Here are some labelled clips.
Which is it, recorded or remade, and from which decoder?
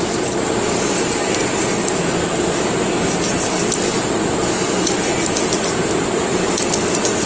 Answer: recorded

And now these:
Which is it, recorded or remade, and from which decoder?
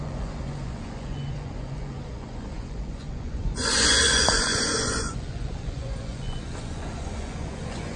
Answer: remade, vocoder, Vocos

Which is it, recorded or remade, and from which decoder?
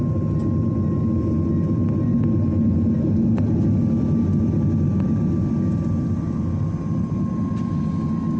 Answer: recorded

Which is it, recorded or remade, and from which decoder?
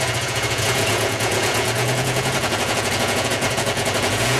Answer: remade, vocoder, Vocos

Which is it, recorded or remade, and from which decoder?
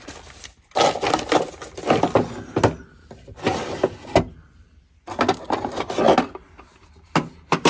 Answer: recorded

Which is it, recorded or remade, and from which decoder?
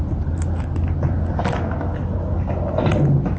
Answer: recorded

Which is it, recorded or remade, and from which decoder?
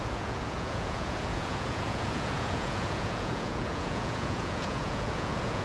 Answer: remade, vocoder, Vocos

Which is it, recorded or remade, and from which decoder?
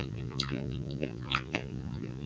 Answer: remade, vocoder, Vocos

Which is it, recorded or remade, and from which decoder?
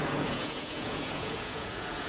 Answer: remade, vocoder, Vocos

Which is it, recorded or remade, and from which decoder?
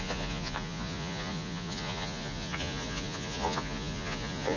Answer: remade, vocoder, Vocos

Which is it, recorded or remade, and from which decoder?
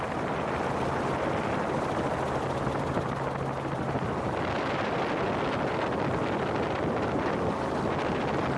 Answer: recorded